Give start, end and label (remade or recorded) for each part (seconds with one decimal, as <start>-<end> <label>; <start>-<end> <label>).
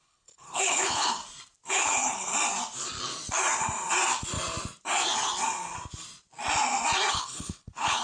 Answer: 0.0-1.2 remade; 1.2-1.7 recorded; 1.7-2.3 remade; 2.3-7.1 recorded; 7.1-8.0 remade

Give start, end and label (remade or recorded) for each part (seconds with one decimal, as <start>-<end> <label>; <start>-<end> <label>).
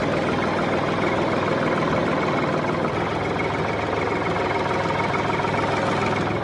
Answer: 0.0-6.4 recorded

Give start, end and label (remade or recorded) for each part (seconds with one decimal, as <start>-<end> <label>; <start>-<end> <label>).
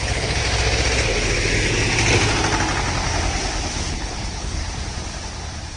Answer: 0.0-0.4 remade; 0.4-3.9 recorded; 3.9-4.6 remade; 4.6-5.8 recorded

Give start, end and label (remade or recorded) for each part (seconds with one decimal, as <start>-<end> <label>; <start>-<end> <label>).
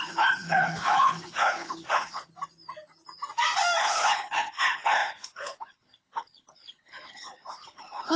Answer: 0.0-2.3 remade; 2.3-3.8 recorded; 3.8-8.2 remade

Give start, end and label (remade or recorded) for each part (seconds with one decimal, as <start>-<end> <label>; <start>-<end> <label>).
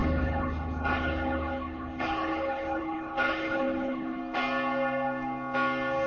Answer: 0.0-4.2 remade; 4.2-6.1 recorded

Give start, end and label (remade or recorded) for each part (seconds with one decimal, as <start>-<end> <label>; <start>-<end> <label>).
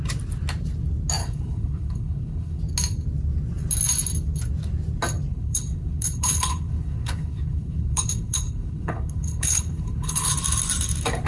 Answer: 0.0-1.2 recorded; 1.2-2.6 remade; 2.6-5.3 recorded; 5.3-10.3 remade; 10.3-11.3 recorded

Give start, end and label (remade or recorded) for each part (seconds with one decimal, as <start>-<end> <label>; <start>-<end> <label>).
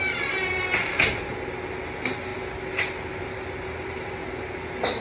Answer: 0.0-5.0 recorded